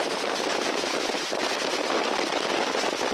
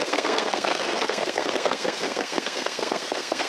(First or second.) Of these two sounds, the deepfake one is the second